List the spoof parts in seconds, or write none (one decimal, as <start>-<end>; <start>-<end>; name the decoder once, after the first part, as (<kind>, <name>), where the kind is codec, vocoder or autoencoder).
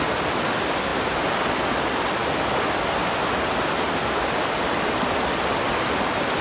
none